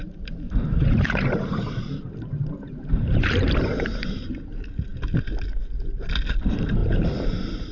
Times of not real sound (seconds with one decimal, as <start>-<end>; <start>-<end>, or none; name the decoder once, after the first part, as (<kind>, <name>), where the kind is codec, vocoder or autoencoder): 0.0-4.3 (vocoder, BigVGAN v2); 6.8-7.3